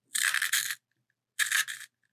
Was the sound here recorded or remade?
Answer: recorded